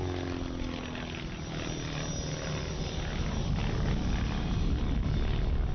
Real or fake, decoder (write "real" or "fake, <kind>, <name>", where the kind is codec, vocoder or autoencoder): real